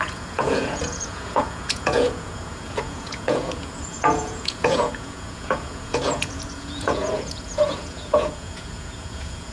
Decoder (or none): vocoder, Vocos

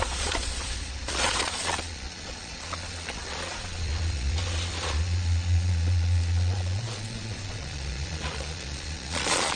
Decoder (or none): vocoder, Vocos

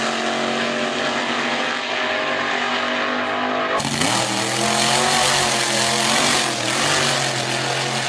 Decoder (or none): none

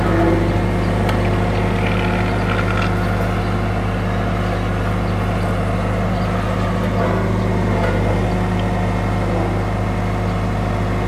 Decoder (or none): none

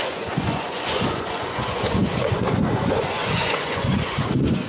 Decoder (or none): vocoder, Vocos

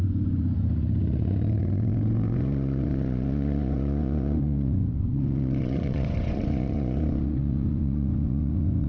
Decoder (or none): vocoder, Vocos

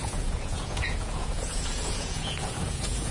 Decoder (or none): vocoder, Vocos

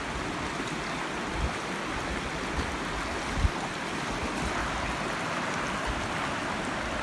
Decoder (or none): none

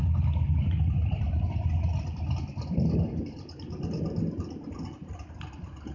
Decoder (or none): none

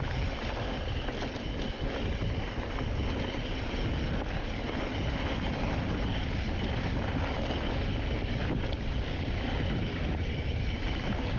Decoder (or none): none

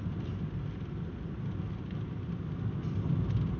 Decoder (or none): none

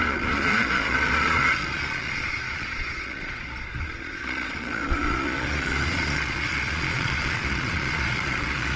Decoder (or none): vocoder, Vocos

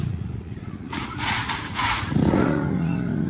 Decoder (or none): vocoder, Vocos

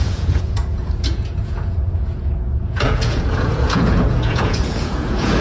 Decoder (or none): vocoder, Vocos